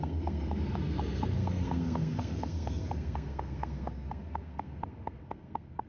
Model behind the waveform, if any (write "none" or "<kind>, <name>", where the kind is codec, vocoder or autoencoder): codec, SNAC